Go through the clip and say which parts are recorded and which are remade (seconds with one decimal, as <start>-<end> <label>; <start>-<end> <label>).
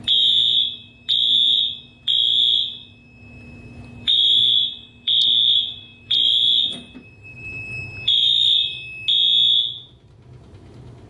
0.0-8.7 remade; 8.7-10.7 recorded; 10.7-11.1 remade